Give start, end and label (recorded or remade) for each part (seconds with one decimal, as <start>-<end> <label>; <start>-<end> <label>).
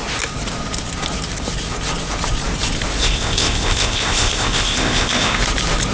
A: 0.0-3.0 recorded; 3.0-5.4 remade; 5.4-5.9 recorded